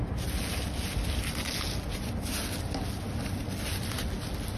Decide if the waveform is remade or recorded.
recorded